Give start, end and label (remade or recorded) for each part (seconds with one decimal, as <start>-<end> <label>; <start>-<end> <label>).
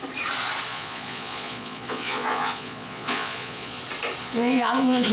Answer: 0.0-0.7 recorded; 0.7-3.8 remade; 3.8-4.2 recorded; 4.2-5.1 remade